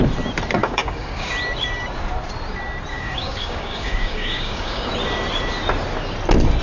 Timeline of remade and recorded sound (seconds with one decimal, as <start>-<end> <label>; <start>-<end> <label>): 0.0-0.6 recorded; 0.6-1.3 remade; 1.3-2.9 recorded; 2.9-4.9 remade; 4.9-6.6 recorded